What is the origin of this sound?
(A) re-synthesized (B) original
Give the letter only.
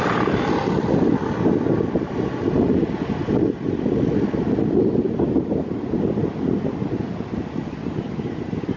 B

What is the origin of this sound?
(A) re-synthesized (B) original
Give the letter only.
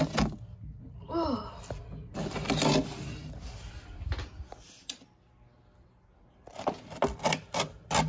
B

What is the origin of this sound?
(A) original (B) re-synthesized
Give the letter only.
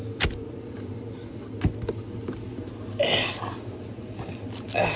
A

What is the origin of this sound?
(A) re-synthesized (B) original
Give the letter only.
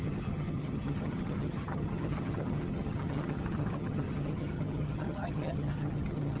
A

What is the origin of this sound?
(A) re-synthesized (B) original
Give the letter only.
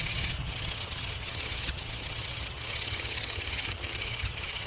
A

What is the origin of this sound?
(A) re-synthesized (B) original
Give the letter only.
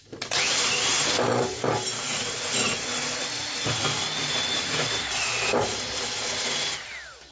B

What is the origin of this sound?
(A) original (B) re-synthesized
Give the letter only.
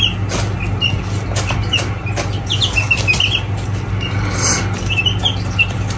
A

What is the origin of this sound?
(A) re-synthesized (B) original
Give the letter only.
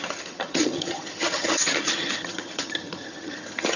A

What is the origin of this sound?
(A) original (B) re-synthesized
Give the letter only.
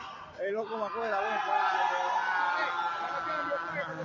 A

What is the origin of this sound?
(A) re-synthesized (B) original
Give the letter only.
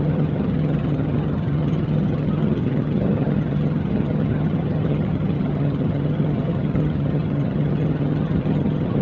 A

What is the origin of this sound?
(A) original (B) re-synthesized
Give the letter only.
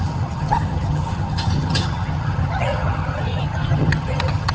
B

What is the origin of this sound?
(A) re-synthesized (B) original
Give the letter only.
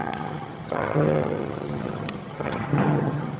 A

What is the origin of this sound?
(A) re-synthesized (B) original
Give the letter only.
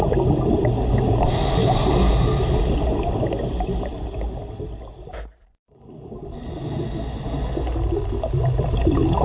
B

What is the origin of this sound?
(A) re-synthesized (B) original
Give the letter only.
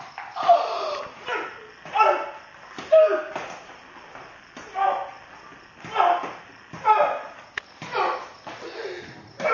B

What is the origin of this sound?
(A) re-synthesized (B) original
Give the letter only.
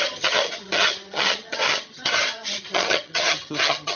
A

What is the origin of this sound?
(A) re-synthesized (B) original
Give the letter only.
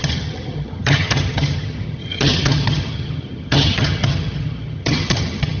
A